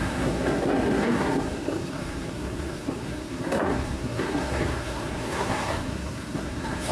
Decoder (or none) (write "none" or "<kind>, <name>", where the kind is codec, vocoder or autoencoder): codec, SNAC